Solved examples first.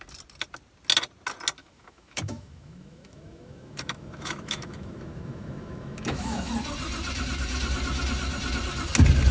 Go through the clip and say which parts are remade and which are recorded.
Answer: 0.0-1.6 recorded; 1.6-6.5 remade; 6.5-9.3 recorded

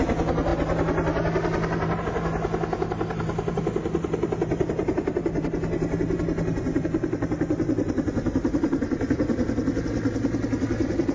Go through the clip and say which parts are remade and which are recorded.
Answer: 0.0-11.1 recorded

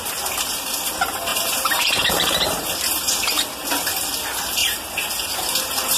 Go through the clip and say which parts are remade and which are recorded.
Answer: 0.0-1.3 recorded; 1.3-2.6 remade; 2.6-4.6 recorded; 4.6-5.5 remade; 5.5-6.0 recorded

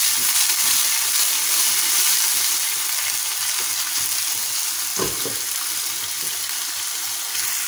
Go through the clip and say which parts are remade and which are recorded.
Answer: 0.0-7.7 recorded

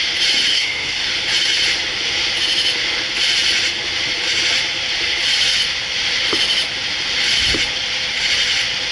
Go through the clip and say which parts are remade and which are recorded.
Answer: 0.0-0.5 recorded; 0.5-1.1 remade; 1.1-8.9 recorded

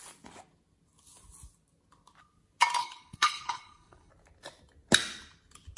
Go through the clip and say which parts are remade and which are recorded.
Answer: 0.0-2.8 recorded; 2.8-4.1 remade; 4.1-5.8 recorded

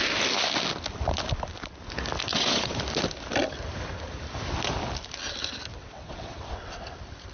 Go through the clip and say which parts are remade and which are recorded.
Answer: 0.0-2.3 recorded; 2.3-2.8 remade; 2.8-5.7 recorded; 5.7-6.8 remade; 6.8-7.3 recorded